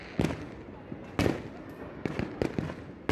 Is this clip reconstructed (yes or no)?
no